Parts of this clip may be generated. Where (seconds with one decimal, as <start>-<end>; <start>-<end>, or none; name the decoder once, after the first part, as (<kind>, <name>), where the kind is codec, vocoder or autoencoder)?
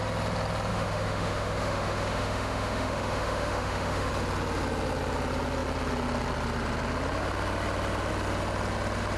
0.7-4.1 (autoencoder, DAC-VAE)